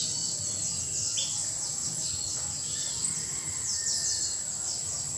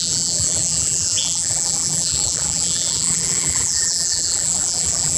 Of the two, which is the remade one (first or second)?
second